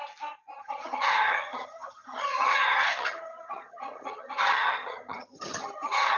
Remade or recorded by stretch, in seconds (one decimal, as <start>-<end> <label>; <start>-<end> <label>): 0.0-0.6 recorded; 0.6-6.2 remade